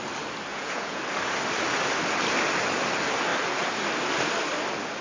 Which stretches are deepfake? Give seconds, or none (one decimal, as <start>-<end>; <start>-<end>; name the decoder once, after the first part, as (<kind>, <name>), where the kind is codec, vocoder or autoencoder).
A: 0.5-1.0 (vocoder, Vocos)